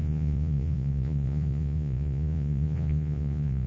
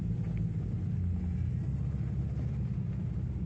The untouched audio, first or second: second